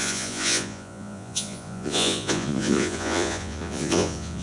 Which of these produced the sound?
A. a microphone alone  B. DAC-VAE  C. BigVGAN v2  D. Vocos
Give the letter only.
D